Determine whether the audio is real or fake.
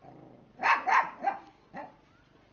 real